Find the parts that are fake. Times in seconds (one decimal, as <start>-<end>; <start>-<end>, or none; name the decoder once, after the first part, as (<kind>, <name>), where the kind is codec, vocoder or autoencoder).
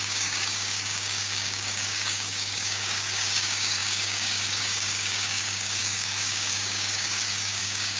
0.0-8.0 (codec, DAC)